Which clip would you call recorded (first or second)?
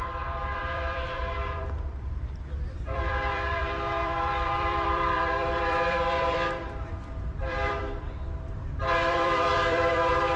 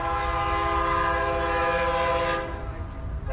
second